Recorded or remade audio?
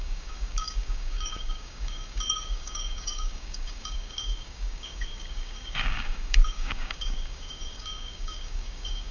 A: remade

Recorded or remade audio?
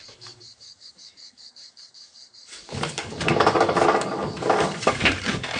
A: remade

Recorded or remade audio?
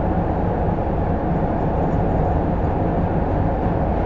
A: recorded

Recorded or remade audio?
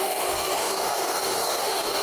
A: remade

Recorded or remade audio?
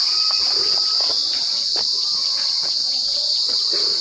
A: recorded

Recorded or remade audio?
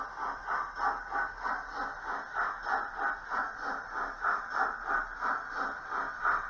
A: recorded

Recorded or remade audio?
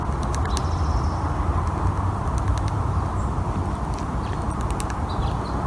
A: recorded